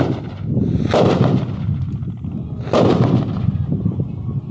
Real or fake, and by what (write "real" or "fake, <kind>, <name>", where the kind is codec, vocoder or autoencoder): real